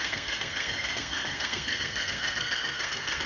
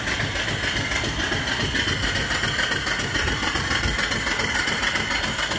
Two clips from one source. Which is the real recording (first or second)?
second